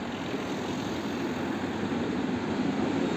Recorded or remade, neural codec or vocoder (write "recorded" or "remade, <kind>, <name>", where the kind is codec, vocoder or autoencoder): recorded